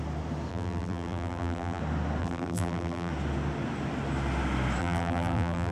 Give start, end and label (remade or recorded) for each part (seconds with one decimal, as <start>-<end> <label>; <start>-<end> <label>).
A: 0.0-0.5 recorded; 0.5-1.8 remade; 1.8-2.2 recorded; 2.2-3.1 remade; 3.1-4.8 recorded; 4.8-5.7 remade